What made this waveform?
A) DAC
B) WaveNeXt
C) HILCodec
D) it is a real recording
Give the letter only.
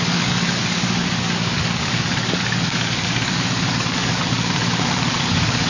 A